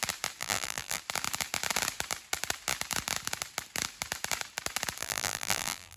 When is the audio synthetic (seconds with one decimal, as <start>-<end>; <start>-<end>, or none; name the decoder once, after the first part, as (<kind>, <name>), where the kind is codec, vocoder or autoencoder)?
0.4-1.0 (vocoder, BigVGAN v2); 5.0-6.0